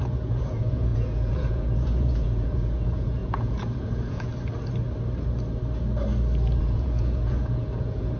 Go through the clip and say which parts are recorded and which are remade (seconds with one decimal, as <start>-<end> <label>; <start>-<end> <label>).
0.0-4.3 remade; 4.3-6.6 recorded; 6.6-8.2 remade